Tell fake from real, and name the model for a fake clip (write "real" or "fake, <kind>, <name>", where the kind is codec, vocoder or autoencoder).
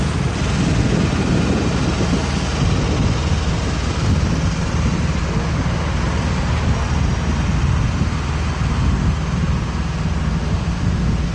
real